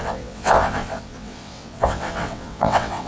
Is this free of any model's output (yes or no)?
no